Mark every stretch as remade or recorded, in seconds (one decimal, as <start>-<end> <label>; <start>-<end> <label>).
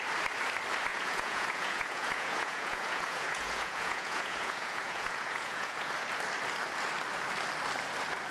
0.0-0.9 recorded; 0.9-5.9 remade; 5.9-8.3 recorded